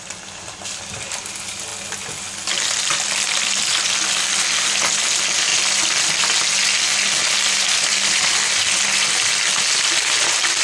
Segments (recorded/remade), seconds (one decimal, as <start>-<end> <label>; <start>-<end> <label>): 0.0-1.7 remade; 1.7-4.9 recorded; 4.9-5.5 remade; 5.5-9.7 recorded; 9.7-10.6 remade